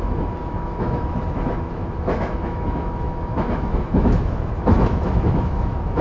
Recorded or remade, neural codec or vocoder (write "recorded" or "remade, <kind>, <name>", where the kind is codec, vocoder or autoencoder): remade, autoencoder, DAC-VAE